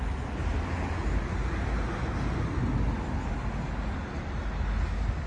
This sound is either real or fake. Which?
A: real